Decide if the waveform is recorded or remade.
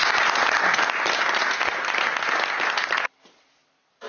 recorded